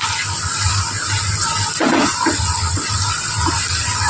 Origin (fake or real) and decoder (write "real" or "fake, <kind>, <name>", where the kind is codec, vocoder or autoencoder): real